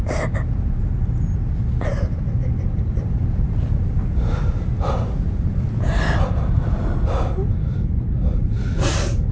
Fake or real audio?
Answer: real